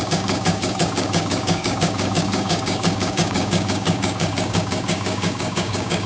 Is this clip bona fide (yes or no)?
no